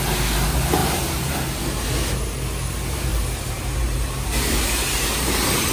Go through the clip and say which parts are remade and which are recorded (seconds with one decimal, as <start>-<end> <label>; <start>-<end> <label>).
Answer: 0.0-0.8 recorded; 0.8-1.3 remade; 1.3-3.1 recorded; 3.1-5.7 remade